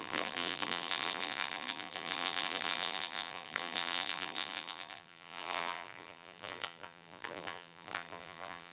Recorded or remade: remade